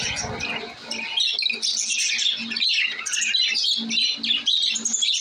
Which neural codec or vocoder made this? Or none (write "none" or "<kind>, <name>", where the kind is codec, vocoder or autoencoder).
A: none